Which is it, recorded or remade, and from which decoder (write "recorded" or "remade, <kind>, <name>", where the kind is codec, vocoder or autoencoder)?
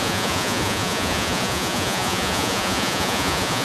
remade, vocoder, Vocos